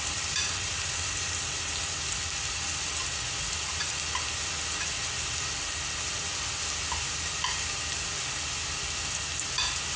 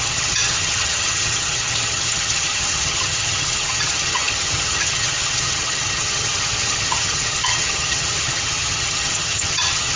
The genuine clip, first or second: first